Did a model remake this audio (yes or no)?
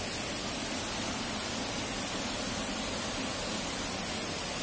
no